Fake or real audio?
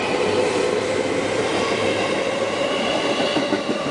real